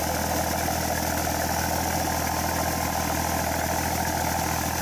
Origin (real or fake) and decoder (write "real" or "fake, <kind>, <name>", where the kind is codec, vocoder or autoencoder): real